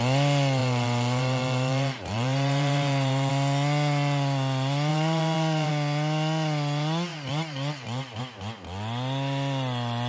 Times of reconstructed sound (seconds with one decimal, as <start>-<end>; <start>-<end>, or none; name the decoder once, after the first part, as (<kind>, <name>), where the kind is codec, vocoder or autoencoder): 0.6-3.3 (vocoder, BigVGAN v2); 4.9-5.7; 7.1-8.2